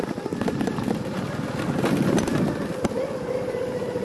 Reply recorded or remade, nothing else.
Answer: recorded